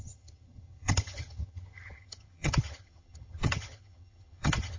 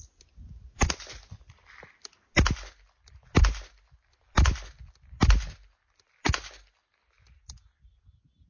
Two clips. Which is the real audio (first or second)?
second